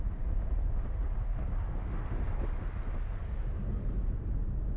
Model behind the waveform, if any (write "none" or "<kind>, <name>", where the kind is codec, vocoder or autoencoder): none